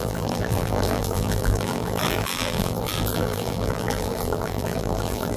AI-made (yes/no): yes